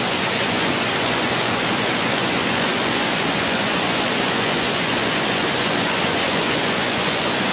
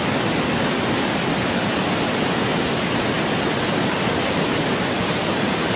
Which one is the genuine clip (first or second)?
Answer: second